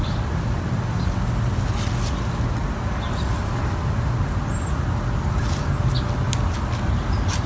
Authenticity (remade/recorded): recorded